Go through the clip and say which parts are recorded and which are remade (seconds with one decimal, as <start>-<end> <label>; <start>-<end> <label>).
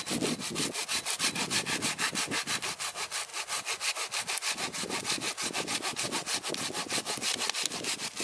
0.0-8.2 recorded